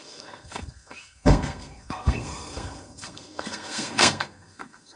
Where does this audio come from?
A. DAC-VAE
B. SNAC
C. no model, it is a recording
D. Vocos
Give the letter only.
B